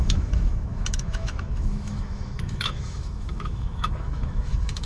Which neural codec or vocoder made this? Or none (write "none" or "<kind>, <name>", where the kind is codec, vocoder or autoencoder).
autoencoder, DAC-VAE